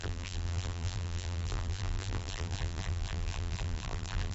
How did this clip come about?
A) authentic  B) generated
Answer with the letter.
B